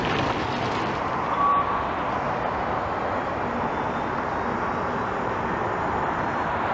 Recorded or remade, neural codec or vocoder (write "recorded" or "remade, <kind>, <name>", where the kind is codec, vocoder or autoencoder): recorded